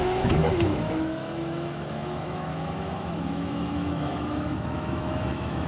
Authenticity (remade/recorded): remade